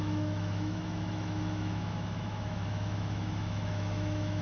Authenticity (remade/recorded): remade